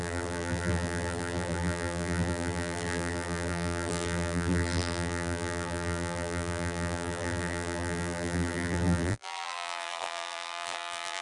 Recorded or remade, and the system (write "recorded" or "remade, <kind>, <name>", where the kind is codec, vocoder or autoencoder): remade, vocoder, BigVGAN v2